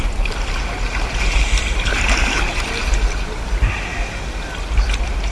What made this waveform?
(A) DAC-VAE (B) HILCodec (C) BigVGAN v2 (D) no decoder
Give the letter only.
D